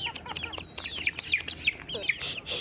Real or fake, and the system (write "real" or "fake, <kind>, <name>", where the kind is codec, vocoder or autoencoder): real